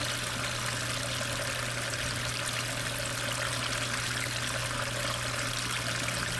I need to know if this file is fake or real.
real